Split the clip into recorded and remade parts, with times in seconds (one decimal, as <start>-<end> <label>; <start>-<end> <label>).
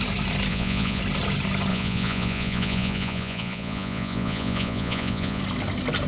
0.0-0.5 recorded; 0.5-1.0 remade; 1.0-1.7 recorded; 1.7-5.4 remade; 5.4-6.1 recorded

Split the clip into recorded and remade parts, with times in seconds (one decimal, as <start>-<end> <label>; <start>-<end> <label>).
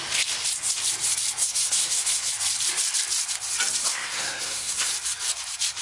0.0-1.4 recorded; 1.4-2.3 remade; 2.3-3.9 recorded; 3.9-4.9 remade; 4.9-5.8 recorded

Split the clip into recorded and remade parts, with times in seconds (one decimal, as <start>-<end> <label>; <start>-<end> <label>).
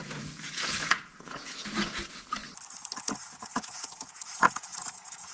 0.0-2.4 remade; 2.4-3.0 recorded; 3.0-5.3 remade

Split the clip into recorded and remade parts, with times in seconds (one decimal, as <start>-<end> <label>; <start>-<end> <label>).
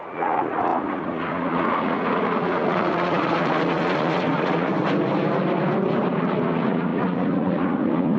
0.0-4.7 remade; 4.7-6.2 recorded; 6.2-8.2 remade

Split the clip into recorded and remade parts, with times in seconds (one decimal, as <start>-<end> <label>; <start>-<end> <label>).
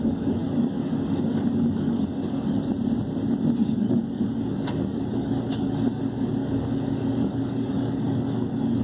0.0-2.6 remade; 2.6-3.6 recorded; 3.6-8.8 remade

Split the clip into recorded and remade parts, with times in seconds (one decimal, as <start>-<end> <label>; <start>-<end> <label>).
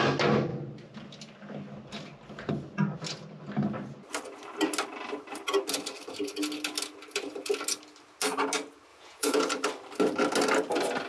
0.0-8.9 recorded; 8.9-9.5 remade; 9.5-11.1 recorded